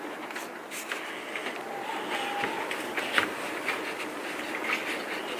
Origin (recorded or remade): recorded